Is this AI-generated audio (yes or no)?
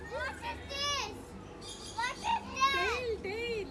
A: no